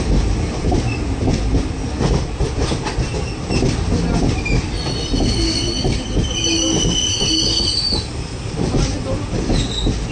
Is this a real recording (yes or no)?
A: yes